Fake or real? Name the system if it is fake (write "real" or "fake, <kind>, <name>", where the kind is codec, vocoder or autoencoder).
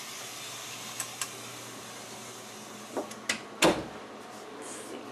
real